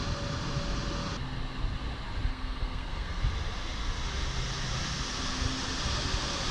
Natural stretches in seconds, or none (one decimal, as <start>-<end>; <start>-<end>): 0.0-2.3; 3.2-6.5